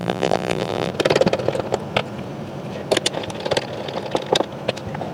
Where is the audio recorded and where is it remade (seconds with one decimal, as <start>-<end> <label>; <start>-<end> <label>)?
0.0-0.9 remade; 0.9-5.1 recorded